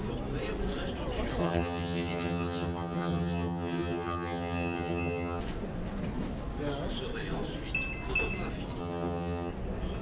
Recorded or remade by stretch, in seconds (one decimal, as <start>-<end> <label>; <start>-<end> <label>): 0.0-1.4 recorded; 1.4-5.4 remade; 5.4-8.8 recorded; 8.8-9.5 remade; 9.5-10.0 recorded